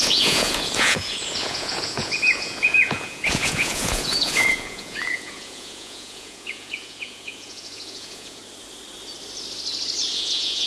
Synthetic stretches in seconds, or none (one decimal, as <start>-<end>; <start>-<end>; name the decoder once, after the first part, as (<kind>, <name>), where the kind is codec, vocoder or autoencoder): 0.0-8.4 (vocoder, Vocos); 10.1-10.7